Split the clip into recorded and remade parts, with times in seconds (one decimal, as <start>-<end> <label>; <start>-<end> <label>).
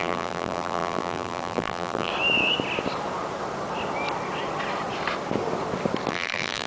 0.0-2.1 remade; 2.1-6.1 recorded; 6.1-6.7 remade